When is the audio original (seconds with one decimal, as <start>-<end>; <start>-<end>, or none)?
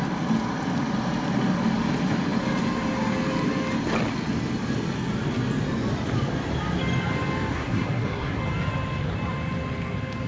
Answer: 0.0-7.5; 8.4-10.3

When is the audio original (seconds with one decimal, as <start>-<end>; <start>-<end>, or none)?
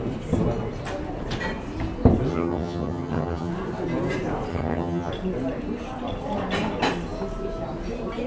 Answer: 0.0-2.3; 3.5-4.5; 5.1-8.3